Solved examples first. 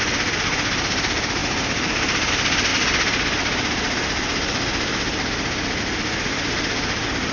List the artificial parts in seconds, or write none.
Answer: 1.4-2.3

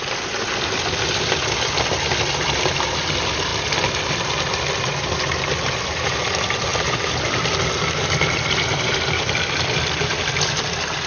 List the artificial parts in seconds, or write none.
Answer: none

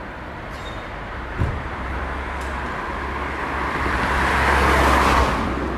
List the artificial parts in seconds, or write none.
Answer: 0.6-2.0

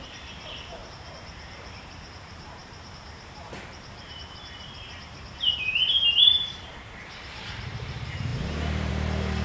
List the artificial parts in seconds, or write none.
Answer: 0.0-0.8; 1.5-9.4